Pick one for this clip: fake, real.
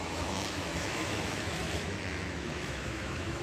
fake